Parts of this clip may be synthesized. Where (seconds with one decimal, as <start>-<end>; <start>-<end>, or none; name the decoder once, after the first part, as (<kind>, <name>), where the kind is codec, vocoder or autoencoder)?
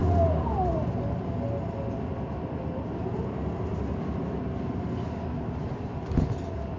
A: none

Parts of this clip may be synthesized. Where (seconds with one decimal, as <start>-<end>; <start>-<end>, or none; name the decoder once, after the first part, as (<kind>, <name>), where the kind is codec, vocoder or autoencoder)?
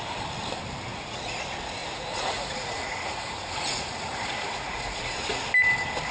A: 0.9-1.4 (vocoder, Vocos); 1.8-5.5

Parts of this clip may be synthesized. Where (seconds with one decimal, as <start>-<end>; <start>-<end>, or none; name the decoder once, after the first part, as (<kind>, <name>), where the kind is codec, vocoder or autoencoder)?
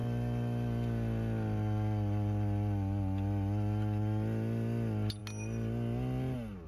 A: none